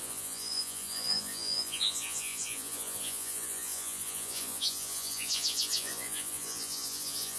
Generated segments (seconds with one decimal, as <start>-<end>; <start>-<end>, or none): 0.0-7.4